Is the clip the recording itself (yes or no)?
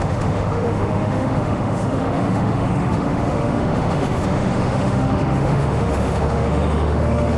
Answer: no